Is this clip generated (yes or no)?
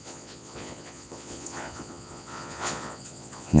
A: yes